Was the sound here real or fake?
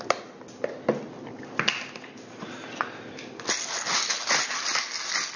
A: real